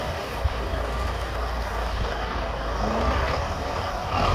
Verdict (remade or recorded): remade